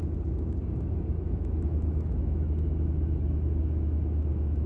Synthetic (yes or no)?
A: yes